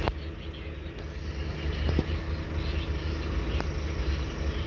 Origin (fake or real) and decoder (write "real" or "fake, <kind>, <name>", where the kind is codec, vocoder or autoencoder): real